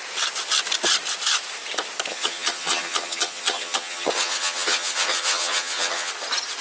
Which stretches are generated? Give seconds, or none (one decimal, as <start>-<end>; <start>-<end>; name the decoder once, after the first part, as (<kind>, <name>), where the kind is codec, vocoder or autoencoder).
2.1-6.1 (vocoder, HiFi-GAN)